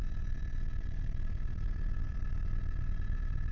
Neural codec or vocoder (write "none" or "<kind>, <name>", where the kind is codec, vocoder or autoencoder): vocoder, Vocos